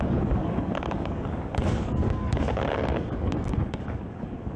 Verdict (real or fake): fake